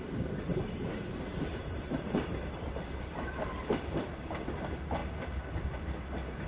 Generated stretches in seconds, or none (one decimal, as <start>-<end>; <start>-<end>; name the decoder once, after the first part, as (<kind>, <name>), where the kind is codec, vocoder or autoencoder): 0.5-4.4 (vocoder, BigVGAN v2)